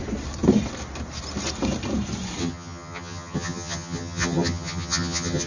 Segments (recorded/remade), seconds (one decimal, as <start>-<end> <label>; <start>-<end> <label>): 0.0-2.4 recorded; 2.4-5.5 remade